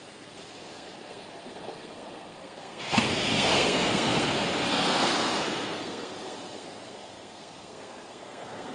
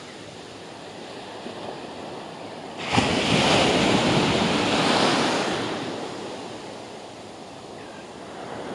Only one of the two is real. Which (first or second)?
second